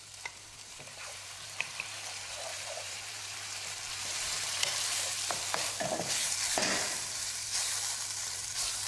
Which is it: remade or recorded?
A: remade